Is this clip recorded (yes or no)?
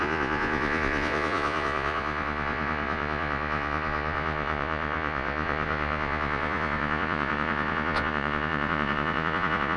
no